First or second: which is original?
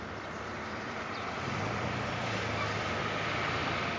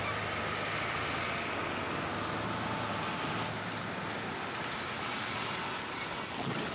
second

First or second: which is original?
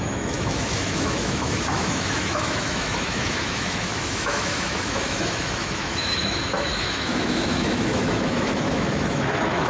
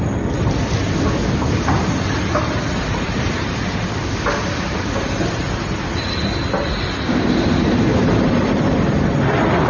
second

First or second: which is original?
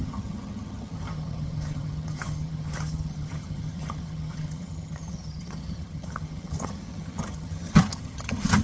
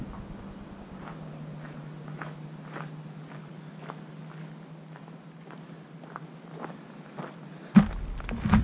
second